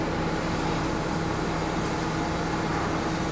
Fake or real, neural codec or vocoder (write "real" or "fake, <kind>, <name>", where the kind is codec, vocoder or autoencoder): real